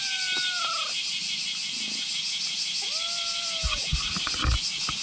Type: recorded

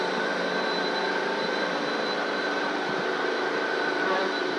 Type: remade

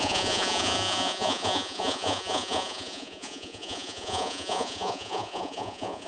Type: remade